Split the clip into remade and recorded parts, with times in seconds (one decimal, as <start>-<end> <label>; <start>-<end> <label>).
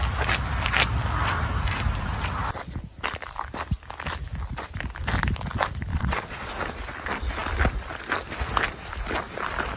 0.0-5.9 recorded; 5.9-6.5 remade; 6.5-9.8 recorded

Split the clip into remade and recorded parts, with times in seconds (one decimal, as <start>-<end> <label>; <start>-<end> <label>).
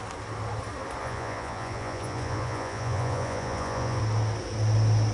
0.0-1.0 recorded; 1.0-4.0 remade; 4.0-5.1 recorded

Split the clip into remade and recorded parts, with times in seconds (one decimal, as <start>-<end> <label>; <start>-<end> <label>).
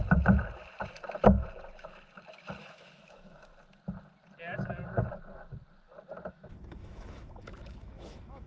0.0-2.6 recorded; 2.6-3.5 remade; 3.5-6.3 recorded; 6.3-8.5 remade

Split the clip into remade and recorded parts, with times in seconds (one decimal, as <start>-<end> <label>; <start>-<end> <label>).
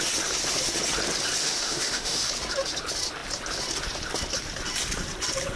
0.0-1.4 recorded; 1.4-2.3 remade; 2.3-5.6 recorded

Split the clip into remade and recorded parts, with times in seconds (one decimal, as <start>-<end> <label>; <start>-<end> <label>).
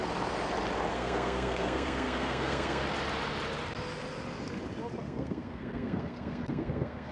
0.0-0.9 recorded; 0.9-2.8 remade; 2.8-5.0 recorded; 5.0-7.1 remade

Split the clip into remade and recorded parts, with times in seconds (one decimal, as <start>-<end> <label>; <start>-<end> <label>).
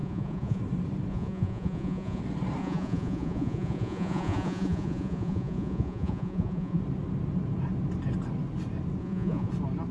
0.0-0.6 remade; 0.6-1.1 recorded; 1.1-2.2 remade; 2.2-2.6 recorded; 2.6-6.8 remade; 6.8-9.0 recorded; 9.0-9.5 remade; 9.5-9.9 recorded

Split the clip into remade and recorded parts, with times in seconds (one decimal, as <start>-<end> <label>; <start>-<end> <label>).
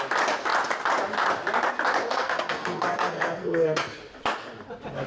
0.0-2.1 recorded; 2.1-4.0 remade; 4.0-5.1 recorded